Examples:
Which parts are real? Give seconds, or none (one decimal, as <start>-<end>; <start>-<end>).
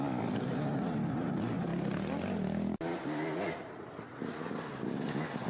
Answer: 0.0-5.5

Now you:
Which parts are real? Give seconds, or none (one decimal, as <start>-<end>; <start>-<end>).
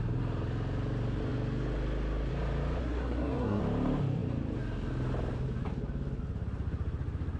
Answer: 0.0-2.8; 3.6-7.4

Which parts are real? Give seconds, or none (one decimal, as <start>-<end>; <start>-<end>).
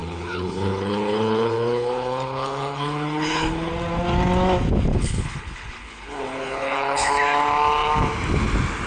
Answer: 3.7-4.9; 7.1-8.9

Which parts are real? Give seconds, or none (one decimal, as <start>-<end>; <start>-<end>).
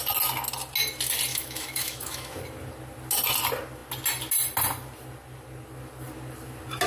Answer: 0.0-1.3; 2.4-6.9